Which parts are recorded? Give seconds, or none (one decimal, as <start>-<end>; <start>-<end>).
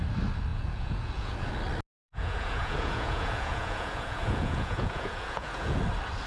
0.0-0.5; 1.5-2.0; 5.8-6.3